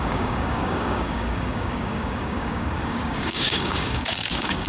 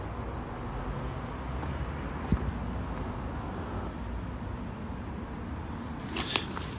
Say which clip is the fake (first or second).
first